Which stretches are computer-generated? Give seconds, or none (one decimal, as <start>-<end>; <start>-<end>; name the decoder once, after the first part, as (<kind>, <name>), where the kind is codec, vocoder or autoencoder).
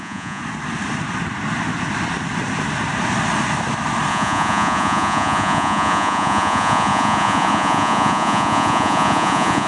0.0-0.4 (vocoder, Vocos); 4.1-9.7